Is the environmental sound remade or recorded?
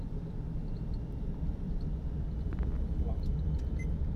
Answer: remade